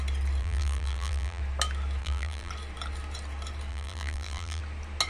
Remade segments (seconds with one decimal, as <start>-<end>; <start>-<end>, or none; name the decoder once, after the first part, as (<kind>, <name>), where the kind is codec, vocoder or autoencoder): 0.4-1.4 (vocoder, BigVGAN v2); 2.0-2.5; 3.7-4.6